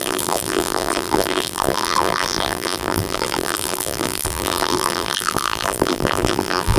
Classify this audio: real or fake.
fake